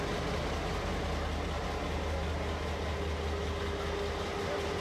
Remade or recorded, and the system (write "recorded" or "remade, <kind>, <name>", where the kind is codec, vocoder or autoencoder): recorded